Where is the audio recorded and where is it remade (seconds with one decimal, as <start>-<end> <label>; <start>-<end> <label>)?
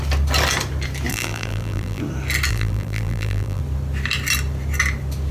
0.0-1.1 recorded; 1.1-2.0 remade; 2.0-2.5 recorded; 2.5-3.6 remade; 3.6-5.3 recorded